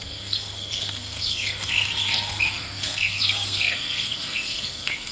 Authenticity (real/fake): fake